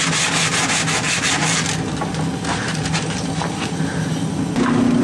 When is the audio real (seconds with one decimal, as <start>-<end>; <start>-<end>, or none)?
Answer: 0.0-5.0